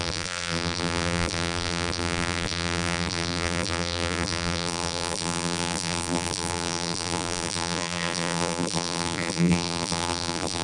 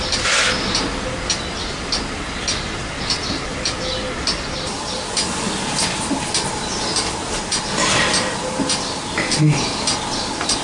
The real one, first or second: second